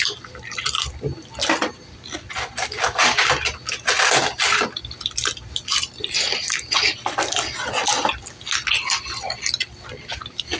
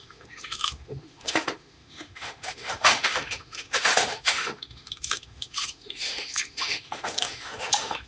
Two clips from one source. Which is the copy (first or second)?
second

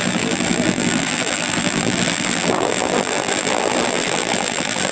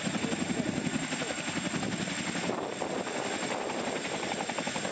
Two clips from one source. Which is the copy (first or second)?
first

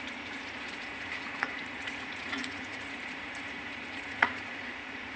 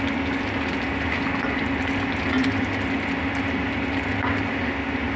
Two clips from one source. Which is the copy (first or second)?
first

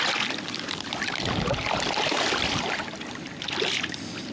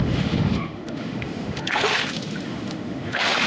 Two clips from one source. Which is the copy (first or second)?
second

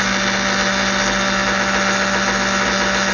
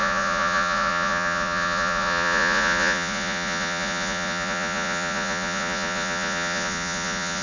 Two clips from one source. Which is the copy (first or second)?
second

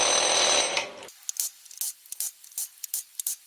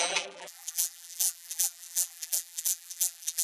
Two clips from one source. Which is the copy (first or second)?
second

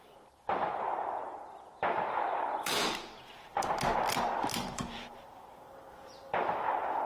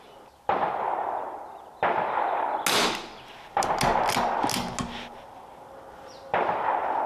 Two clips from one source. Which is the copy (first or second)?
first